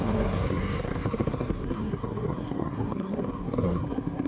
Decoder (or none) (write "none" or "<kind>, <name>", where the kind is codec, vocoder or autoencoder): codec, SNAC